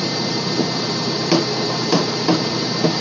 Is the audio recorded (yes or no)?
no